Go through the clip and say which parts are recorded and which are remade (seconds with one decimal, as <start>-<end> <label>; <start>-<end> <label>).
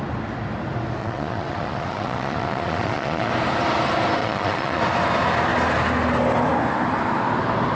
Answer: 0.0-1.0 recorded; 1.0-3.3 remade; 3.3-4.2 recorded; 4.2-4.8 remade; 4.8-7.7 recorded